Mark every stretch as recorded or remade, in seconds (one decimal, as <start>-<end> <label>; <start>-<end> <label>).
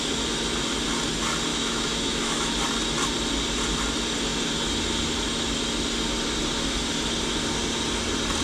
0.0-1.5 recorded; 1.5-2.5 remade; 2.5-8.4 recorded